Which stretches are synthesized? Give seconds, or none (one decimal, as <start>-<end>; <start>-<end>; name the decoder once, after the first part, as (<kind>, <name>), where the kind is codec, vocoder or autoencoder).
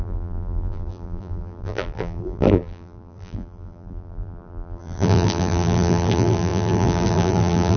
0.0-7.8 (vocoder, BigVGAN v2)